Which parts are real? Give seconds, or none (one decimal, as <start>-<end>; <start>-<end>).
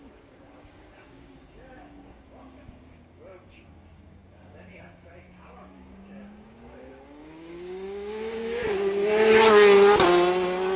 8.6-10.8